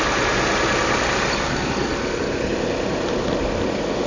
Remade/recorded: recorded